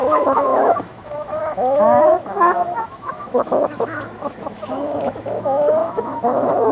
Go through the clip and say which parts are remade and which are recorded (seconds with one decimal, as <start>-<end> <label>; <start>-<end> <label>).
0.0-6.7 remade